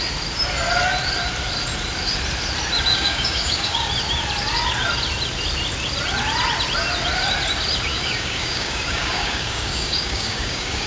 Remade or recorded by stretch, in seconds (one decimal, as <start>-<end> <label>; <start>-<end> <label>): 0.0-2.9 recorded; 2.9-3.9 remade; 3.9-7.9 recorded; 7.9-10.9 remade